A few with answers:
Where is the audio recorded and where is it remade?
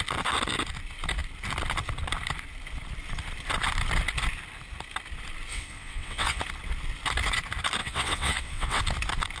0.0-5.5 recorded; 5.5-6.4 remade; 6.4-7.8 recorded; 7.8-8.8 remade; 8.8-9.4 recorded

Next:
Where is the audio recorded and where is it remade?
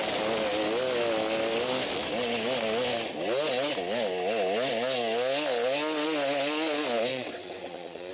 0.0-7.1 recorded; 7.1-8.1 remade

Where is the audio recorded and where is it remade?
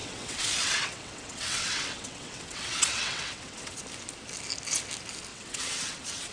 0.0-3.8 remade; 3.8-5.3 recorded; 5.3-6.3 remade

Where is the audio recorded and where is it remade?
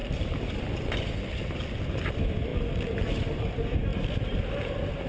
0.0-5.1 recorded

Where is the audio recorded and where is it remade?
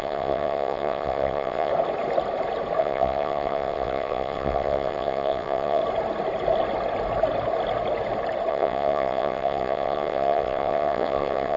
0.0-1.7 remade; 1.7-2.8 recorded; 2.8-5.8 remade; 5.8-8.5 recorded; 8.5-11.6 remade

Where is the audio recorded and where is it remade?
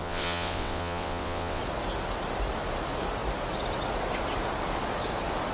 0.0-1.6 remade; 1.6-5.5 recorded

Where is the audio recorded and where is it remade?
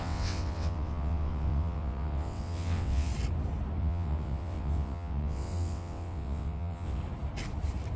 0.0-3.1 remade; 3.1-3.8 recorded; 3.8-7.0 remade; 7.0-8.0 recorded